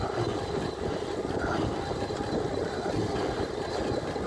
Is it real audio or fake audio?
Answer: real